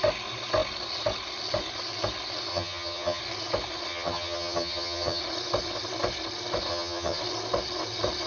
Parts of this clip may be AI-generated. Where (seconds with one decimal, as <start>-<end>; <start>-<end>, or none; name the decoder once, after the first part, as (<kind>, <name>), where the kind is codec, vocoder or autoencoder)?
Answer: 2.5-3.2 (vocoder, HiFi-GAN); 3.9-5.2; 6.7-7.2